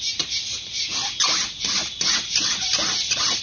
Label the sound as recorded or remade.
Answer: recorded